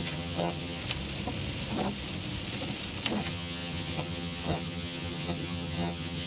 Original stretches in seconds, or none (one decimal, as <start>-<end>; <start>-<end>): 0.8-3.2